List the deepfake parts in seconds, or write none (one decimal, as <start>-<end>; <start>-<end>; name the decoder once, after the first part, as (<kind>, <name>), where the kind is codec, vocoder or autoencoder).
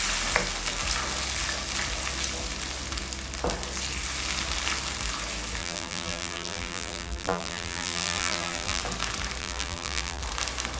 5.6-8.8 (vocoder, BigVGAN v2); 9.4-10.2